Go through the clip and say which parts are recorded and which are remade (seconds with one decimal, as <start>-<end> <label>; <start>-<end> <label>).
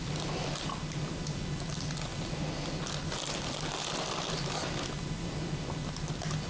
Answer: 0.0-6.5 recorded